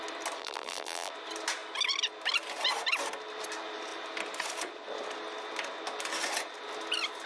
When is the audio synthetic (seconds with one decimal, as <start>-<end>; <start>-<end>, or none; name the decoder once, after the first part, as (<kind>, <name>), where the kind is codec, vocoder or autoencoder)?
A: 0.4-1.1 (vocoder, BigVGAN v2)